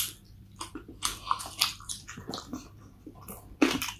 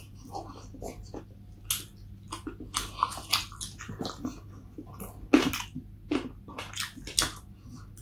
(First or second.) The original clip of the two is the second